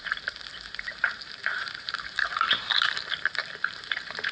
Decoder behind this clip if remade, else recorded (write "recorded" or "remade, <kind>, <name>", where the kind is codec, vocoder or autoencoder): remade, vocoder, BigVGAN v2